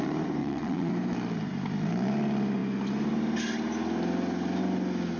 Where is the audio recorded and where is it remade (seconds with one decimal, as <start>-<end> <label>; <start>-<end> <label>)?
0.0-0.4 recorded; 0.4-0.9 remade; 0.9-5.2 recorded